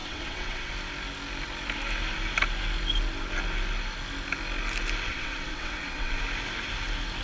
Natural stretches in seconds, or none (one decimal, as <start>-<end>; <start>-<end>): 0.7-5.1; 6.2-7.2